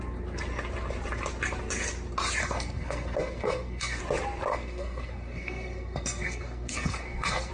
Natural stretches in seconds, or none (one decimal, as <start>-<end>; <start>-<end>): 0.0-2.4; 4.0-4.5